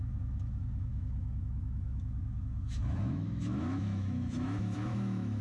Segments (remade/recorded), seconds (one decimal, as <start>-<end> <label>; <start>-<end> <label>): 0.0-5.4 remade